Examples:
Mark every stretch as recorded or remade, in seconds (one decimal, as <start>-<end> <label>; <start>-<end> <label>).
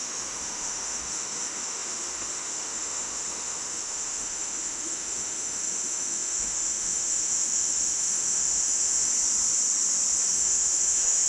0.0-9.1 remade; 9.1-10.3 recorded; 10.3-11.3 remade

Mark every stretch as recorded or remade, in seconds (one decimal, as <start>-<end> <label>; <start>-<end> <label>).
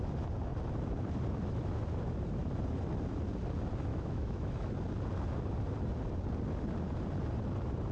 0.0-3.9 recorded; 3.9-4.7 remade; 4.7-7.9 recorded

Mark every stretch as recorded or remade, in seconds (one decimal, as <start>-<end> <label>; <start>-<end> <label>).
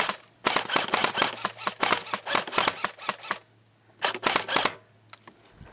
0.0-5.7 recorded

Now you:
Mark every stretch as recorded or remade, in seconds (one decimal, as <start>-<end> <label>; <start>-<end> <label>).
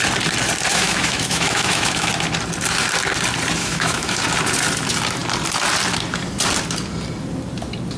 0.0-0.7 recorded; 0.7-2.1 remade; 2.1-3.6 recorded; 3.6-4.2 remade; 4.2-8.0 recorded